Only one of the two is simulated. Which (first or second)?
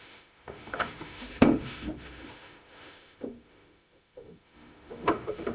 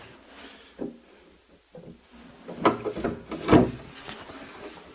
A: first